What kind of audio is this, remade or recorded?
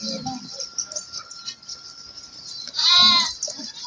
recorded